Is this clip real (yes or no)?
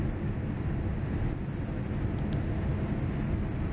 yes